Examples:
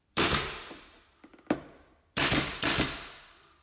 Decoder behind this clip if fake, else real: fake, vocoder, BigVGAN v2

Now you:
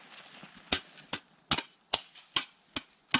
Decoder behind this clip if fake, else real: real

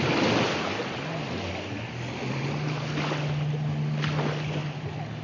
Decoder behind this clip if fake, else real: real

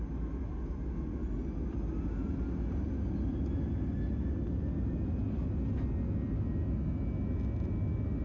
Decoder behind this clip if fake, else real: real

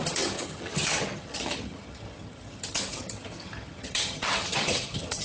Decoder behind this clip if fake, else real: fake, vocoder, HiFi-GAN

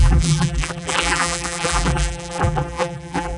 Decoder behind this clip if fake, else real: fake, vocoder, BigVGAN v2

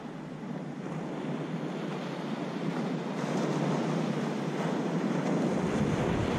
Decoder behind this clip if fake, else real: real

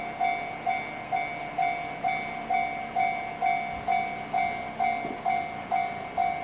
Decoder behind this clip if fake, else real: real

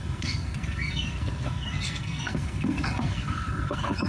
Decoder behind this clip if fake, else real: fake, codec, SNAC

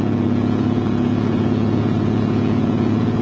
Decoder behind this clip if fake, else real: fake, vocoder, Vocos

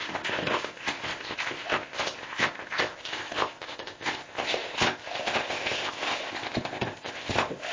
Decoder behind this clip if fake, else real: fake, codec, ZipCodec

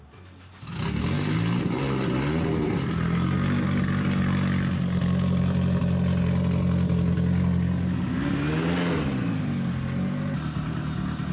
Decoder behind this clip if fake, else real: real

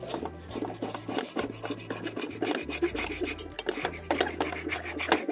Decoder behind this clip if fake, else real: real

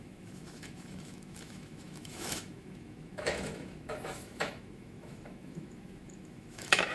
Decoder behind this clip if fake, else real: fake, autoencoder, DAC-VAE